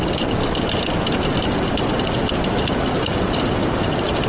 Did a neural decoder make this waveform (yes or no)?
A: no